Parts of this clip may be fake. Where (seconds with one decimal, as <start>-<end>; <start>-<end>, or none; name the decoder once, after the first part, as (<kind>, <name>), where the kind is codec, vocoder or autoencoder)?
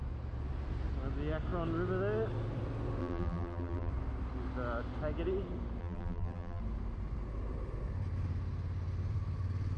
3.0-3.9 (vocoder, BigVGAN v2); 5.8-6.6